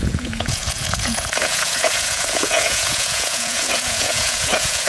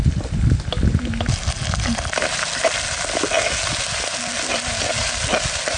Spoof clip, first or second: first